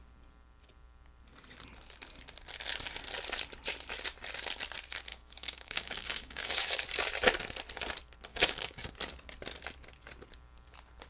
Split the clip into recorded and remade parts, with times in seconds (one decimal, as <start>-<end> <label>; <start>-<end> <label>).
0.0-5.1 recorded; 5.1-6.7 remade; 6.7-8.3 recorded; 8.3-8.9 remade; 8.9-11.1 recorded